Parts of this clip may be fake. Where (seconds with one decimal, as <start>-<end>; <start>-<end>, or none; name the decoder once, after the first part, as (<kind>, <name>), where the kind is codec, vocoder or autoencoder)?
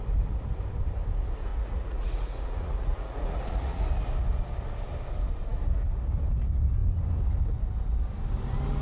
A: 1.5-3.8 (vocoder, Vocos)